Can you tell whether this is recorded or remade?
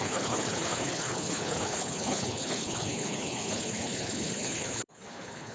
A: remade